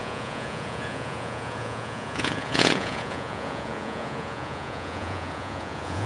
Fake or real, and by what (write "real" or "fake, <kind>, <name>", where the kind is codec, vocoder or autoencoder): fake, vocoder, Vocos